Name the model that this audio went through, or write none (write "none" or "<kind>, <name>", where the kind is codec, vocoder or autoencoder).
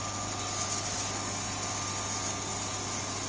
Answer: none